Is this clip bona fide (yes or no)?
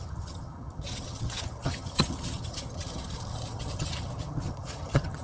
no